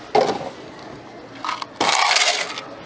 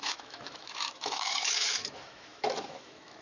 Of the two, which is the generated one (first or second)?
second